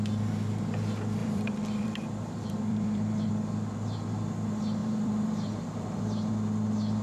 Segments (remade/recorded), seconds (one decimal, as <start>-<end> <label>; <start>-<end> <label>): 0.0-1.2 recorded; 1.2-3.3 remade; 3.3-4.8 recorded; 4.8-6.3 remade; 6.3-7.0 recorded